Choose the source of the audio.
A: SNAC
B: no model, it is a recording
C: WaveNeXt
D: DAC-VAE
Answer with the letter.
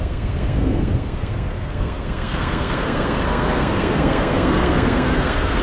A